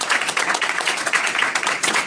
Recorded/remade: remade